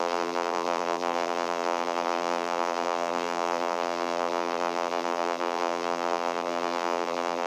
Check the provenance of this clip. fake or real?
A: fake